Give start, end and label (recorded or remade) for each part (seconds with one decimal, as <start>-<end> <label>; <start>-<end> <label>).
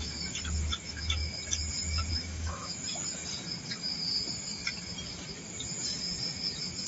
0.0-1.2 remade; 1.2-2.1 recorded; 2.1-3.2 remade; 3.2-6.9 recorded